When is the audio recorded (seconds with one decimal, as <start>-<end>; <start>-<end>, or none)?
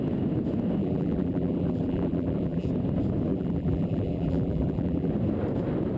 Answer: 0.0-0.8; 2.7-3.3; 5.1-6.0